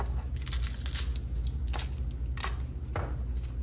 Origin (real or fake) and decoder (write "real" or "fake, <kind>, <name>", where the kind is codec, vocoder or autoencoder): real